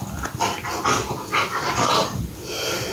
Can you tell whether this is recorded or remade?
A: recorded